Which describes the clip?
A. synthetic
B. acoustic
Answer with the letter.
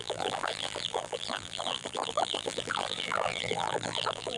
A